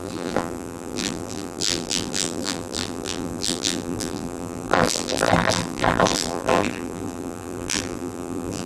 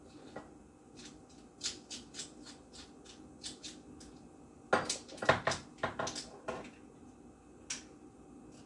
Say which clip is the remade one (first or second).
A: first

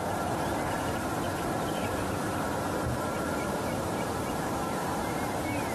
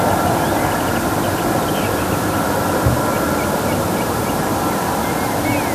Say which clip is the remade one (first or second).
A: first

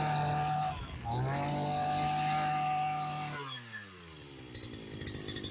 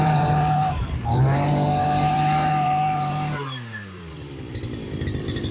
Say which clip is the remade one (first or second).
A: second